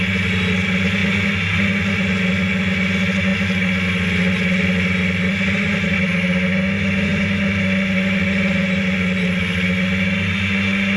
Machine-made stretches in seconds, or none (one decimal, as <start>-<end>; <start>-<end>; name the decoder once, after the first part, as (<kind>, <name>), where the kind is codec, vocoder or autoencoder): none